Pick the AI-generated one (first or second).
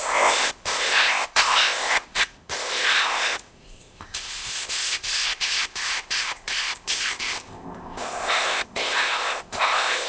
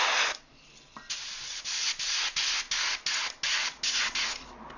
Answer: first